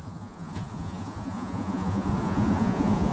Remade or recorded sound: remade